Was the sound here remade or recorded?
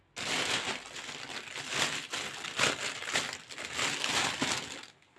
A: recorded